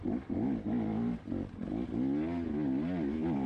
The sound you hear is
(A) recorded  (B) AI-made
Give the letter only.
A